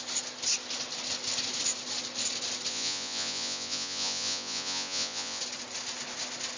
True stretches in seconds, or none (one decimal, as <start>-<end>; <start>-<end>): 0.0-2.7; 5.4-6.6